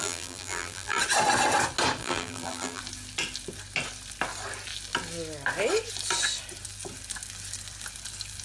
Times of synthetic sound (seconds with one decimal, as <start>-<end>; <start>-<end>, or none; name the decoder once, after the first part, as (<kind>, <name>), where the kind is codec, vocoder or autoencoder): 0.0-1.0 (vocoder, BigVGAN v2); 2.0-2.8